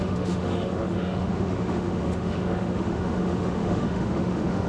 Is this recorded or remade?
remade